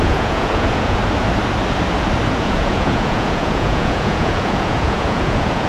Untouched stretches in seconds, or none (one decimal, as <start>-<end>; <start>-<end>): 1.0-2.3

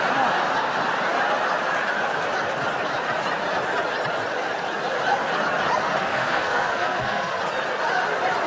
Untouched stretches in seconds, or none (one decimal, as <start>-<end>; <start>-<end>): 0.0-6.0; 7.4-8.5

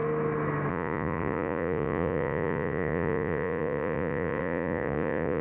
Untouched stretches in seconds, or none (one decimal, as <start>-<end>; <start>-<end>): 0.0-0.7

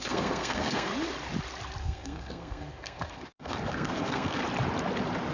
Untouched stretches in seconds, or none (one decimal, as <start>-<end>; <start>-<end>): 0.9-1.8; 4.4-5.3